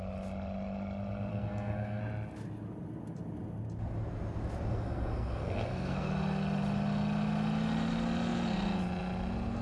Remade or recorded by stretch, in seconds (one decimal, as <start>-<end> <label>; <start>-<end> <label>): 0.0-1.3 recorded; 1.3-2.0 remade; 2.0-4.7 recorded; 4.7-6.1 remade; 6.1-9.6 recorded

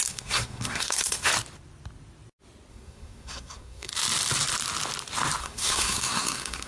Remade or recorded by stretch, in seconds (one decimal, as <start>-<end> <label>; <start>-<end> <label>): 0.0-1.3 remade; 1.3-2.7 recorded; 2.7-3.9 remade; 3.9-5.4 recorded; 5.4-6.7 remade

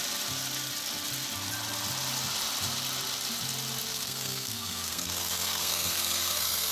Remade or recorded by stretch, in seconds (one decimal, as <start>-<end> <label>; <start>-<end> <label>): 0.0-3.9 recorded; 3.9-6.7 remade

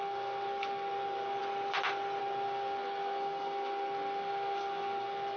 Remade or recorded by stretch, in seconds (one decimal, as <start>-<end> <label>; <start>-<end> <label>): 0.0-1.4 remade; 1.4-2.2 recorded; 2.2-5.4 remade

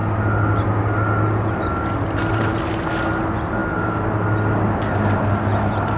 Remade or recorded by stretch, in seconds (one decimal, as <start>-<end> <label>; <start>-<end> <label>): 0.0-6.0 recorded

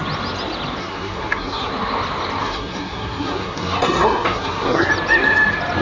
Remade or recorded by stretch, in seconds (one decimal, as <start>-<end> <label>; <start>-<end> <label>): 0.0-0.8 recorded; 0.8-1.7 remade; 1.7-2.4 recorded; 2.4-4.9 remade; 4.9-5.8 recorded

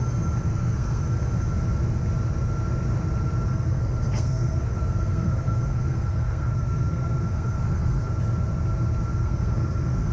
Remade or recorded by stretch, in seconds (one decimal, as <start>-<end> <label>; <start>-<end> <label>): 0.0-0.5 recorded; 0.5-1.0 remade; 1.0-3.5 recorded; 3.5-8.1 remade; 8.1-9.1 recorded; 9.1-10.1 remade

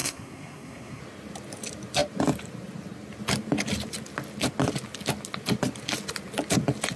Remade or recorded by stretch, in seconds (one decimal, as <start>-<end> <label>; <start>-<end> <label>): 0.0-1.0 remade; 1.0-7.0 recorded